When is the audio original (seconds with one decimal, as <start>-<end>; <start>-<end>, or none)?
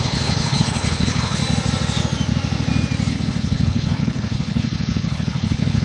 1.4-3.1